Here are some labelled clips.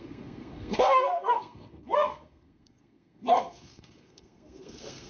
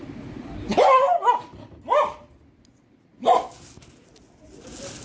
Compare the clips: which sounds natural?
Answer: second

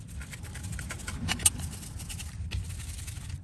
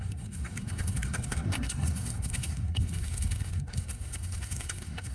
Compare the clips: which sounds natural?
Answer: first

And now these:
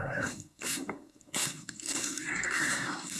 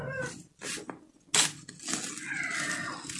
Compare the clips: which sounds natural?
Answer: second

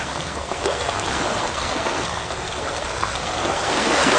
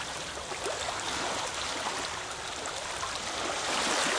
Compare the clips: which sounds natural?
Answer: second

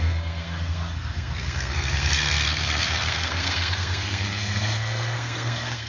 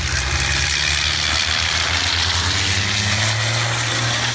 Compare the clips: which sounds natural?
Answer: second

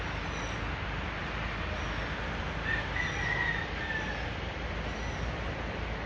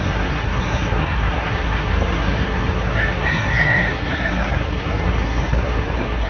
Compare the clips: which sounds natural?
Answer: first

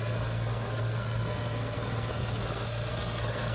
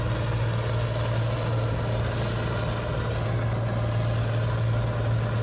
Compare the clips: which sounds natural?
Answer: second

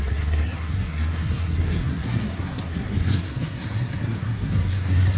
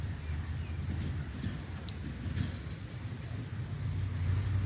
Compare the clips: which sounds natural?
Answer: second